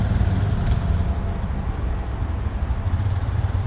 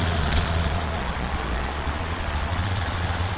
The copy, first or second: second